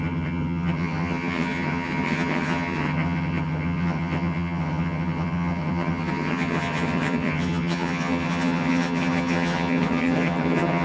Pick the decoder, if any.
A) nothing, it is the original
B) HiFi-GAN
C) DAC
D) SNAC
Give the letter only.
B